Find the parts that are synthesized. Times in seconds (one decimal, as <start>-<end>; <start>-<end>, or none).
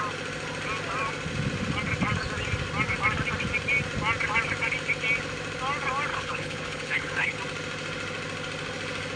6.1-7.4